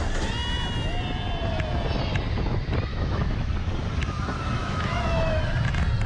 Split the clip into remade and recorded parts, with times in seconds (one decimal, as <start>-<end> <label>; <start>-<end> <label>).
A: 0.0-2.9 recorded; 2.9-3.5 remade; 3.5-4.6 recorded; 4.6-5.4 remade; 5.4-6.1 recorded